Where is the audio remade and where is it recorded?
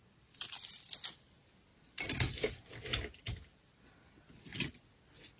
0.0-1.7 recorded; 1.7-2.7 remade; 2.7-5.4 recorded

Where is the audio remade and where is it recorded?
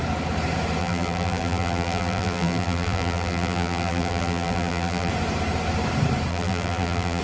0.0-0.8 recorded; 0.8-5.1 remade; 5.1-6.3 recorded; 6.3-7.2 remade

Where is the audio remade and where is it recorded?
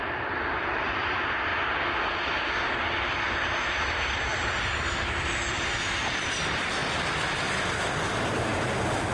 0.0-1.5 remade; 1.5-3.7 recorded; 3.7-6.8 remade; 6.8-7.6 recorded; 7.6-9.1 remade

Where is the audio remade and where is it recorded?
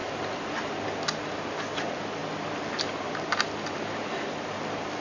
0.0-5.0 recorded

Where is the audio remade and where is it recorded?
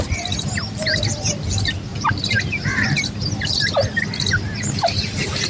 0.0-1.9 recorded; 1.9-3.1 remade; 3.1-5.5 recorded